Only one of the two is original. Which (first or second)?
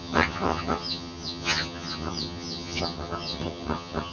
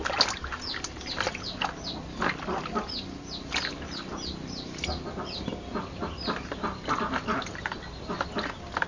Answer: second